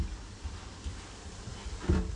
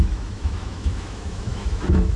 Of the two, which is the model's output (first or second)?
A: second